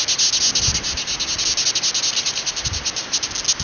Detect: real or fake real